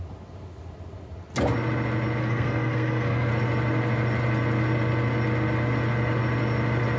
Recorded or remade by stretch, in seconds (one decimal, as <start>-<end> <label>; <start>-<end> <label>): 0.0-2.2 recorded; 2.2-3.3 remade; 3.3-7.0 recorded